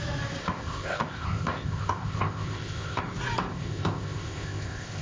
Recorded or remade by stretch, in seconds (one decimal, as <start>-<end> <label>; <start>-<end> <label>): 0.0-0.4 recorded; 0.4-3.0 remade; 3.0-3.5 recorded; 3.5-5.0 remade